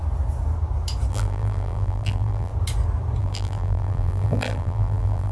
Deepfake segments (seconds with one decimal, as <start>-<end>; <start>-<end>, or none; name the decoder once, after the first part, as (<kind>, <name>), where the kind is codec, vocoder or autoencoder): 1.1-2.5 (vocoder, BigVGAN v2); 3.2-5.3